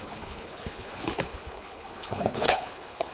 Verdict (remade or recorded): remade